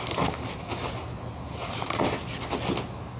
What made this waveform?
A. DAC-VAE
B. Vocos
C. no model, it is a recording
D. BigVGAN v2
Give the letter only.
C